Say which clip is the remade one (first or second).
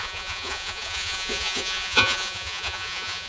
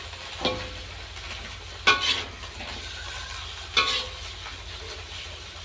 first